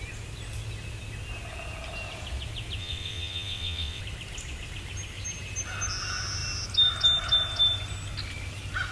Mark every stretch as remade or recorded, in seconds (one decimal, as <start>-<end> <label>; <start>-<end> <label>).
0.0-2.8 recorded; 2.8-4.0 remade; 4.0-8.9 recorded